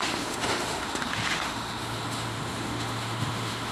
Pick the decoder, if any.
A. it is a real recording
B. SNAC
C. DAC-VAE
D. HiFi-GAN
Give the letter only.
C